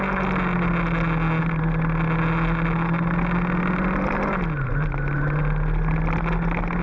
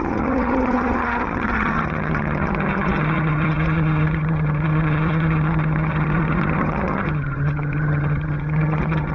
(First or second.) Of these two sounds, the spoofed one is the second